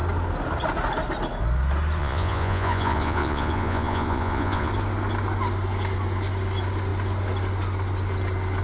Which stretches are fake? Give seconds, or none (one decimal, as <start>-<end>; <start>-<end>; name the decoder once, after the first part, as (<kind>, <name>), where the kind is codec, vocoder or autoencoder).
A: 2.0-4.7 (vocoder, Vocos)